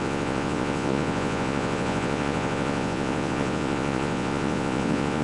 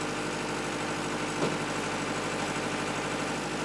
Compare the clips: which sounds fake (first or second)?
first